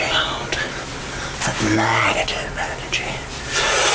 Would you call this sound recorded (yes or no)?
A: yes